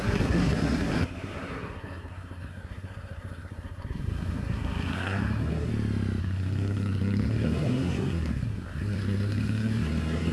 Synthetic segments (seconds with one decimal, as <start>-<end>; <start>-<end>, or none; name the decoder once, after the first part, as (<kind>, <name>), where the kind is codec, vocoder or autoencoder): 0.0-5.7 (codec, SNAC); 6.2-10.3